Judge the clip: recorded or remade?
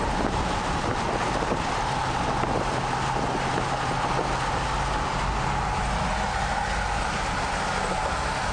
recorded